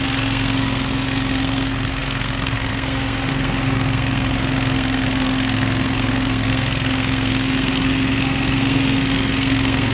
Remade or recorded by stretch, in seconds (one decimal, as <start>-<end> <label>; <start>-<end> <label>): 0.0-9.9 remade